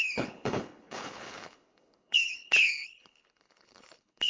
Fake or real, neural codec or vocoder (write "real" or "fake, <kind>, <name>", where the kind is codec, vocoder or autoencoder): fake, codec, HILCodec